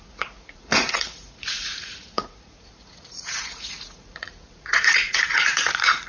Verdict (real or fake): fake